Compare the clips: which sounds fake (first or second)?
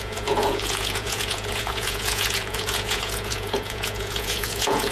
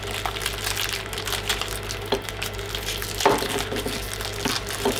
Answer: first